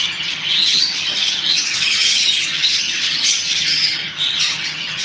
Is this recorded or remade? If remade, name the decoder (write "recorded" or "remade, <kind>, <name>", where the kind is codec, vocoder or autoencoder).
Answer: remade, vocoder, HiFi-GAN